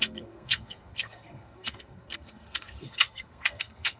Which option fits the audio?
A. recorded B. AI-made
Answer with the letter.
B